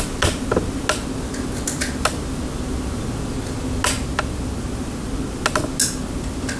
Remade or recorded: recorded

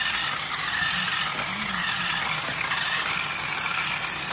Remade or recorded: recorded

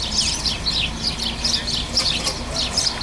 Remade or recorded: recorded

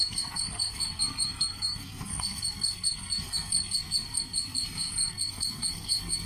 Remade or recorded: remade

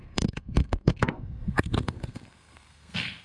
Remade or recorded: remade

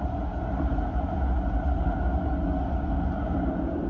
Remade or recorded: recorded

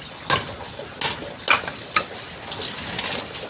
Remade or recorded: recorded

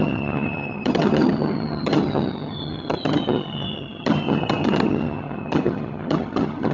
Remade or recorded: remade